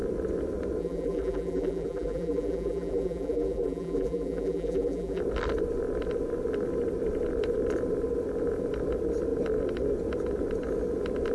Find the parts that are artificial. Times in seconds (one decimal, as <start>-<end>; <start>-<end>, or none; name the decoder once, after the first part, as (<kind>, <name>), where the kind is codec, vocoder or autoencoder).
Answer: 0.8-5.2 (vocoder, BigVGAN v2)